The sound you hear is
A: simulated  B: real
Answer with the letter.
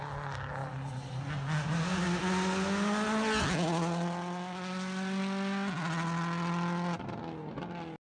B